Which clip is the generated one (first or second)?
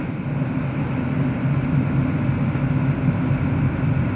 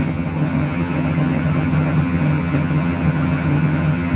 second